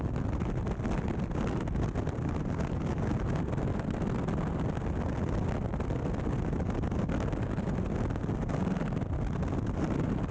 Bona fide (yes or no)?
yes